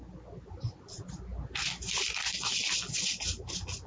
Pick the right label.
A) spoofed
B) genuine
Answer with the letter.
B